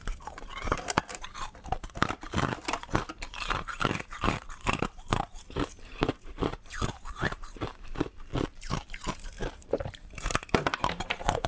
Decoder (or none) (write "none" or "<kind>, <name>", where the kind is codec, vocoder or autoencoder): vocoder, BigVGAN v2